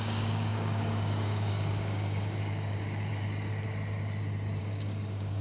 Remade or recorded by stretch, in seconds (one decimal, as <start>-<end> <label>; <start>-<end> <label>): 0.0-3.1 remade; 3.1-4.6 recorded; 4.6-5.4 remade